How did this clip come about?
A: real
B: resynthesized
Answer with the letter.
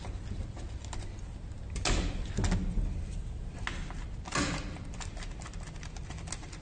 A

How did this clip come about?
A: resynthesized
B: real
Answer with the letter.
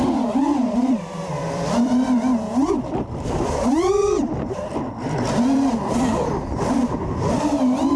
A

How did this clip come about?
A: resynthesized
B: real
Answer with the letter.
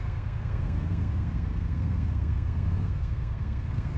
A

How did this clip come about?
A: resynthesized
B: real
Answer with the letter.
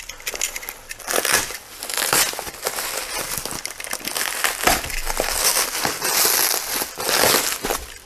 B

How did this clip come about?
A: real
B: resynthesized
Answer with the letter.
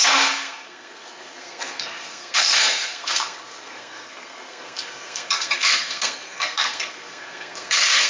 B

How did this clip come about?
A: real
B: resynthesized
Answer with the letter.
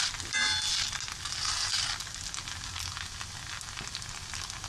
A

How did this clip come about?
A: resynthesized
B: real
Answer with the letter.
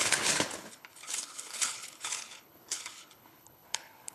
A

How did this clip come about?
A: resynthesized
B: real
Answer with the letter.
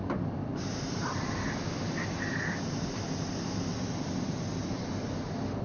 B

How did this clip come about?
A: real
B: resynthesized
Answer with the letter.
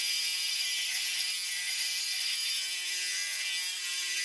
A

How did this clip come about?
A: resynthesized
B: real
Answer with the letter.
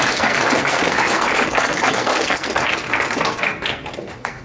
A